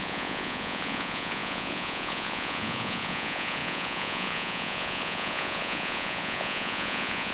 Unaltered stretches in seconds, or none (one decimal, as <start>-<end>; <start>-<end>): none